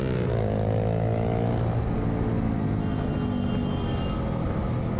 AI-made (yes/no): no